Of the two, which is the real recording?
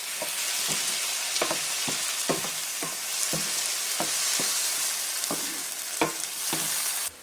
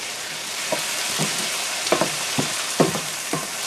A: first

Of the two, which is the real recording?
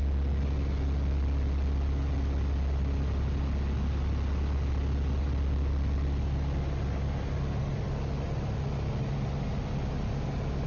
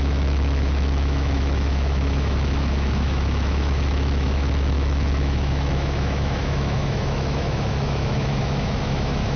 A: first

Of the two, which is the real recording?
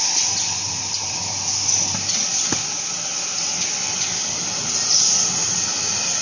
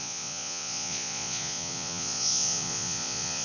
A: first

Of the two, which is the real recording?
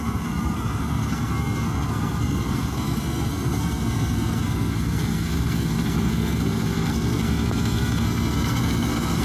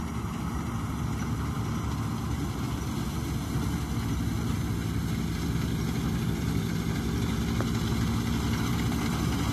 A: second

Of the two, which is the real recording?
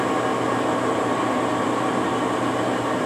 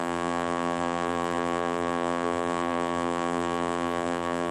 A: first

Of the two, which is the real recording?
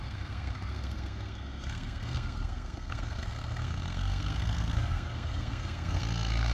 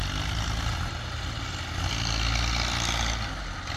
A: second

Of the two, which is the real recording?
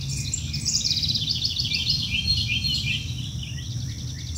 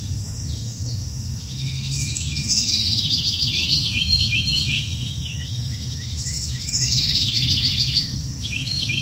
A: first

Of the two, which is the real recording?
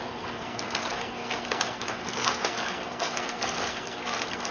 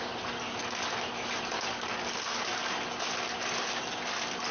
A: second